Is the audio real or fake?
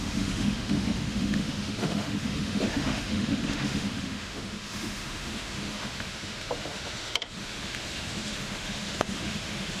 fake